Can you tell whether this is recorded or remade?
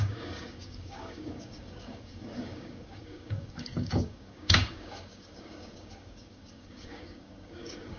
remade